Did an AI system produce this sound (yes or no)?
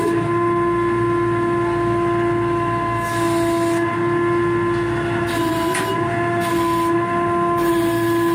no